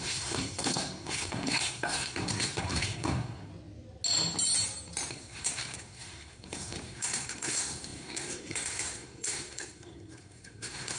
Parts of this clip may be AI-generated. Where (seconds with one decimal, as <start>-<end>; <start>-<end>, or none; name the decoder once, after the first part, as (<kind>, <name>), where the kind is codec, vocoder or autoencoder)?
0.0-3.5 (codec, SNAC); 5.1-11.0